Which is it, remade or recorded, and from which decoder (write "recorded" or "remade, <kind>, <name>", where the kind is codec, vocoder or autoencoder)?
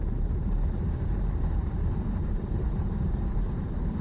remade, vocoder, BigVGAN v2